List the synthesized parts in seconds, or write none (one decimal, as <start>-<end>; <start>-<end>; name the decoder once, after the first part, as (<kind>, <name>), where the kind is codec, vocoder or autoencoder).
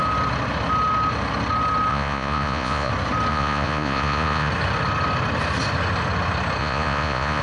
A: 1.9-2.9 (vocoder, Vocos); 3.3-4.5; 6.6-7.4